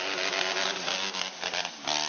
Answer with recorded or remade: recorded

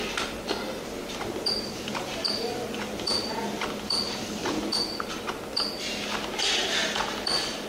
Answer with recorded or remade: recorded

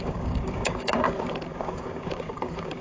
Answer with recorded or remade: remade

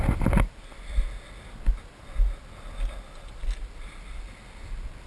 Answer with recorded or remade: recorded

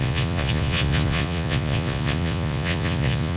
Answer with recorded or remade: remade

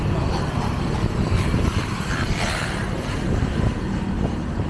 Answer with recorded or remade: remade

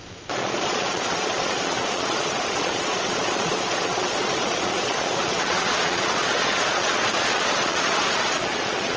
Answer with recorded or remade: remade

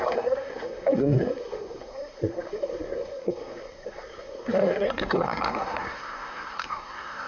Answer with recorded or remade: remade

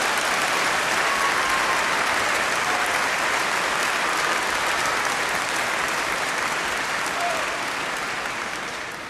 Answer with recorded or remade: recorded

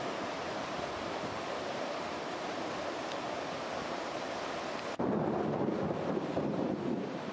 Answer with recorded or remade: remade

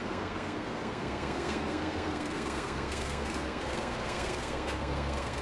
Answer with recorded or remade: remade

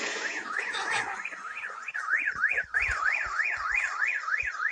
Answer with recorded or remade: remade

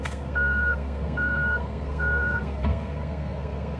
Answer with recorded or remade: remade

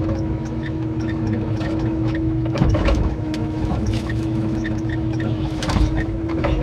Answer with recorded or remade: remade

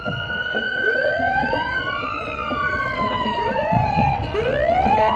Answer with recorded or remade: remade